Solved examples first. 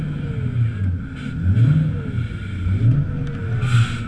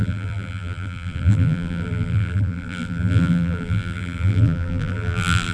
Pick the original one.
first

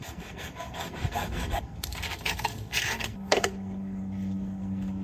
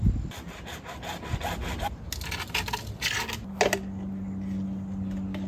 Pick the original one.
second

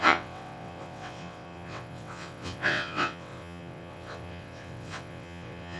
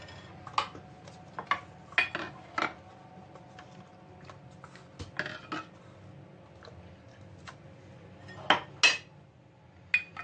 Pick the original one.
second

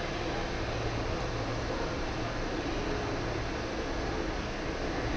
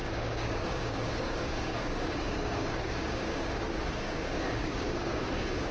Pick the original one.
first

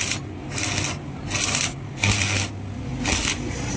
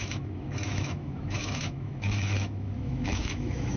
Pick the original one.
first